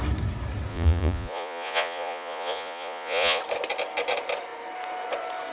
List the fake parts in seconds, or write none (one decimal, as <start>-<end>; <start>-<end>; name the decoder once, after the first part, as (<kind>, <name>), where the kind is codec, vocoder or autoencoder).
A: 0.7-3.4 (vocoder, Vocos)